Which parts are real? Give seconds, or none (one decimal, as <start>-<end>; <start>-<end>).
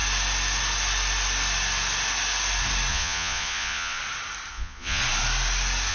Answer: 0.0-2.9; 4.0-4.5; 5.0-5.9